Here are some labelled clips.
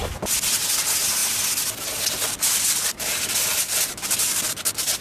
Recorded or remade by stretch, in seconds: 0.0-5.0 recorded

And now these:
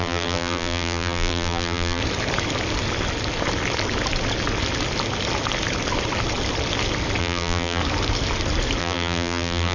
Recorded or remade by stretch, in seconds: 0.0-2.0 remade; 2.0-7.2 recorded; 7.2-7.8 remade; 7.8-8.8 recorded; 8.8-9.7 remade

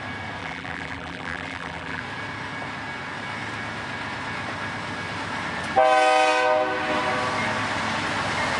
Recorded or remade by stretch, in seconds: 0.0-0.4 recorded; 0.4-2.0 remade; 2.0-8.6 recorded

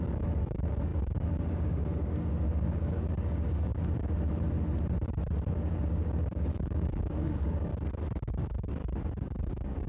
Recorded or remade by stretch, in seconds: 0.0-3.7 remade; 3.7-5.5 recorded; 5.5-7.7 remade; 7.7-8.3 recorded; 8.3-8.8 remade; 8.8-9.5 recorded; 9.5-9.9 remade

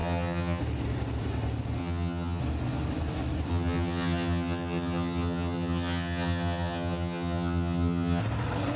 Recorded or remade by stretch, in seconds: 0.0-0.6 remade; 0.6-1.8 recorded; 1.8-2.4 remade; 2.4-3.5 recorded; 3.5-8.2 remade; 8.2-8.8 recorded